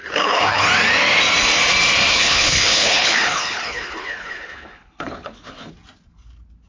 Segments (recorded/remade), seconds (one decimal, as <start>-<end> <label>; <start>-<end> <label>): 0.0-0.6 remade; 0.6-2.1 recorded; 2.1-5.7 remade; 5.7-6.7 recorded